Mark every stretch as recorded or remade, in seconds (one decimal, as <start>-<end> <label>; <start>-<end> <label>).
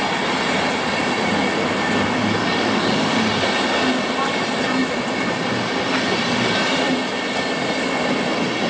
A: 0.0-2.4 recorded; 2.4-3.2 remade; 3.2-8.7 recorded